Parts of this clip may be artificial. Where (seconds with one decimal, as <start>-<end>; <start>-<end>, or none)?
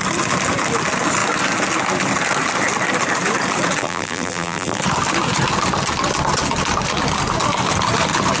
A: 3.8-4.8